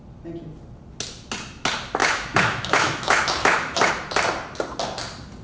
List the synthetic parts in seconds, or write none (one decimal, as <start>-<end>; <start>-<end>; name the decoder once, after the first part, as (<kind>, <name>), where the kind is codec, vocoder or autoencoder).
2.0-3.9 (autoencoder, DAC-VAE)